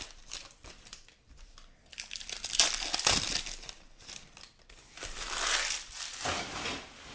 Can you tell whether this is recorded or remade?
remade